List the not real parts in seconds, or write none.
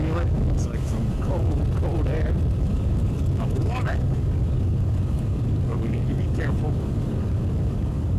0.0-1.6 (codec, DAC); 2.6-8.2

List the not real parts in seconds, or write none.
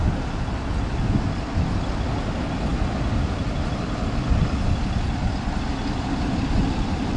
none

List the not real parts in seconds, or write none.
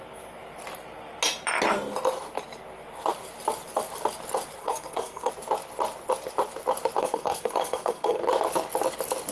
4.6-5.3 (codec, SNAC); 7.0-8.2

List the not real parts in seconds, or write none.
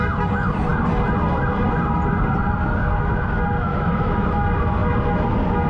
3.7-4.3 (autoencoder, DAC-VAE)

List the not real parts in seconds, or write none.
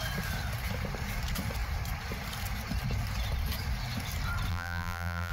4.5-5.3 (vocoder, BigVGAN v2)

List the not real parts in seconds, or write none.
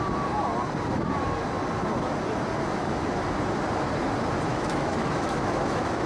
4.5-6.1 (autoencoder, DAC-VAE)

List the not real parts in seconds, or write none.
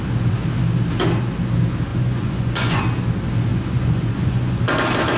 1.9-2.8 (vocoder, Vocos); 3.5-4.6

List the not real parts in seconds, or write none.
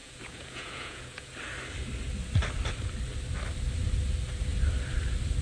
0.0-1.3 (vocoder, Vocos)